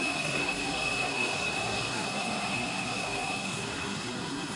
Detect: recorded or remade remade